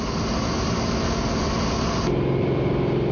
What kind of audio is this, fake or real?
real